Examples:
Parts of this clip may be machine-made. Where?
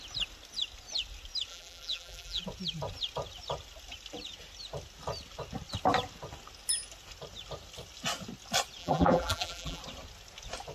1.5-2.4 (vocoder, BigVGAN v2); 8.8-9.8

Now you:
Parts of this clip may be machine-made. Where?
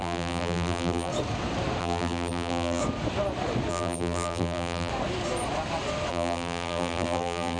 0.0-1.1 (vocoder, BigVGAN v2); 1.8-2.8; 3.7-4.9; 6.1-7.6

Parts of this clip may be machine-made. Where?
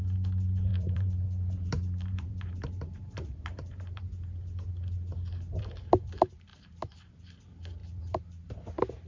0.7-4.0 (vocoder, BigVGAN v2); 6.5-7.2; 7.8-8.5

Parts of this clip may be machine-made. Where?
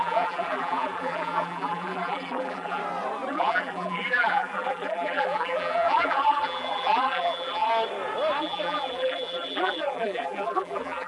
0.0-2.8 (vocoder, BigVGAN v2); 3.3-7.7; 8.4-11.1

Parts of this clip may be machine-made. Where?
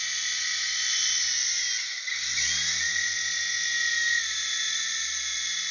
none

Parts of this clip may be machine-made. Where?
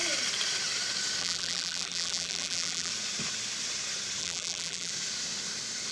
1.2-2.9 (vocoder, BigVGAN v2); 4.2-4.9